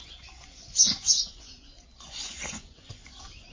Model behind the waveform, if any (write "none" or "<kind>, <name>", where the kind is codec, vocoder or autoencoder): vocoder, Vocos